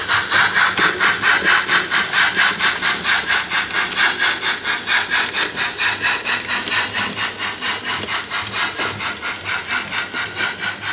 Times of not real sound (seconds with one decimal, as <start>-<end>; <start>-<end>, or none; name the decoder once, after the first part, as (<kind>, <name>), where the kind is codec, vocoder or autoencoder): none